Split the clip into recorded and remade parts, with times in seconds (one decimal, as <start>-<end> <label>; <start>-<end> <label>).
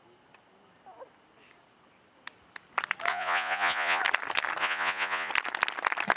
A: 0.0-3.1 recorded; 3.1-4.0 remade; 4.0-4.6 recorded; 4.6-5.3 remade; 5.3-6.2 recorded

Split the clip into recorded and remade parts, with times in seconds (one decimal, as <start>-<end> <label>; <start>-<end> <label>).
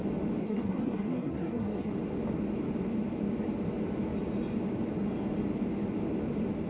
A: 0.0-0.4 recorded; 0.4-1.9 remade; 1.9-6.7 recorded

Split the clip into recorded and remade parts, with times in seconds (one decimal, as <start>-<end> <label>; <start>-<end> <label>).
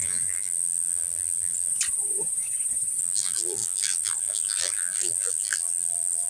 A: 0.0-1.7 remade; 1.7-3.0 recorded; 3.0-6.3 remade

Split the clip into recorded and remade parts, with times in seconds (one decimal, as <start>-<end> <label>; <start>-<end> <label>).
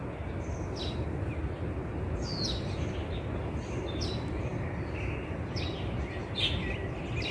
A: 0.0-7.3 recorded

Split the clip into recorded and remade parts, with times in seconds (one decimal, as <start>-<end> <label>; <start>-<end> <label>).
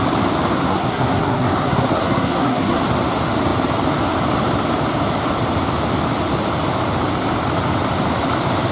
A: 0.0-0.6 recorded; 0.6-2.8 remade; 2.8-8.7 recorded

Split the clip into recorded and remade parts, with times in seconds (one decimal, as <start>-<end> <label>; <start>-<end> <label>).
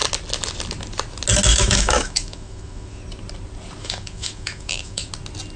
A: 0.0-1.5 recorded; 1.5-3.0 remade; 3.0-3.8 recorded; 3.8-5.1 remade; 5.1-5.6 recorded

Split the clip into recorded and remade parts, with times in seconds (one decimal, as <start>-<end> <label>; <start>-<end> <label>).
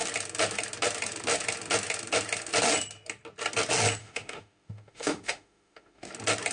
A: 0.0-4.0 recorded; 4.0-6.1 remade; 6.1-6.5 recorded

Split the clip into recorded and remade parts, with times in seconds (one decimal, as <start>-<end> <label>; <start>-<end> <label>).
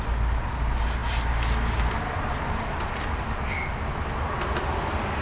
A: 0.0-5.2 recorded